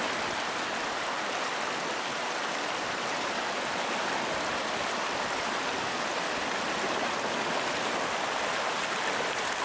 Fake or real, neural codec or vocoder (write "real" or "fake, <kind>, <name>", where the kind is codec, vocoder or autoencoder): real